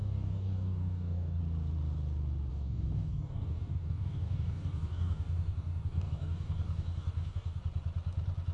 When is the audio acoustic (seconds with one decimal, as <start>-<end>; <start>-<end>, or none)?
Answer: 1.4-2.5; 7.6-8.5